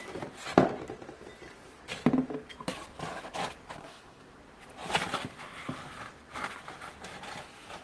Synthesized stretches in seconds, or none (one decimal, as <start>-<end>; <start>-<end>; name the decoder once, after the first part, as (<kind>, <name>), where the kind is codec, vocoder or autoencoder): 3.8-4.3 (codec, SNAC)